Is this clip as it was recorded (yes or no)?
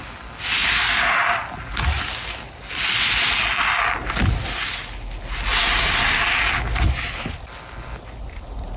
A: yes